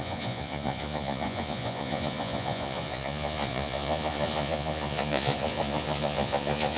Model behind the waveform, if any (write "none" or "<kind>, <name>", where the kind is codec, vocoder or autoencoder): vocoder, Vocos